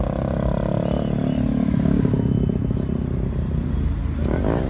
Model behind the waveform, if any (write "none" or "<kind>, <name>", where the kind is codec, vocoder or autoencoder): none